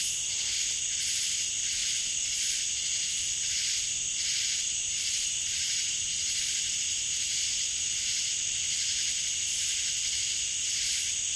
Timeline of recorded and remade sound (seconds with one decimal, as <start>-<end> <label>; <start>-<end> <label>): 0.0-1.8 recorded; 1.8-2.6 remade; 2.6-4.3 recorded; 4.3-7.4 remade; 7.4-11.4 recorded